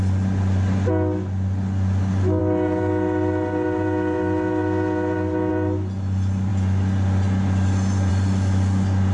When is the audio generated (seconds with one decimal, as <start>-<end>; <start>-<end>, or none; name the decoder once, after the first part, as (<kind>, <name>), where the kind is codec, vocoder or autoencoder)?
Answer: 2.4-5.5 (vocoder, BigVGAN v2)